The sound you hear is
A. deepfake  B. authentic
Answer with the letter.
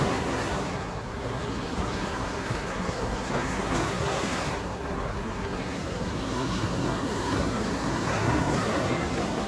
A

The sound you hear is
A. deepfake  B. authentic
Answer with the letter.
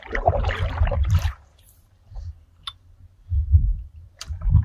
A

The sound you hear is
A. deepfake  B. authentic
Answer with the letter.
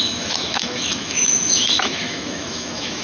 A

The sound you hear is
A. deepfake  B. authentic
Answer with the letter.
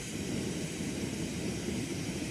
A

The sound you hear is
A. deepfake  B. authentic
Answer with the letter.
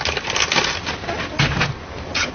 B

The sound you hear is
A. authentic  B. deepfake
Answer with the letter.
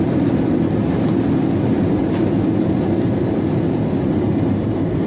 A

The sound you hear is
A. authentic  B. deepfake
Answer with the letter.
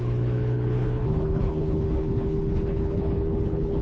B